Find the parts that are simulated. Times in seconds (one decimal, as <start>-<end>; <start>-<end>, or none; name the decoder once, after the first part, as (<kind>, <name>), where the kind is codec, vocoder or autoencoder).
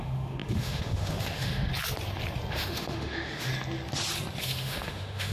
0.0-1.7 (autoencoder, DAC-VAE); 2.5-3.5; 4.4-5.3